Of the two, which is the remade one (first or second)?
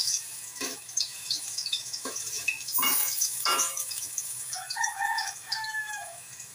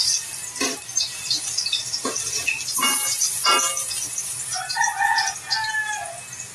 first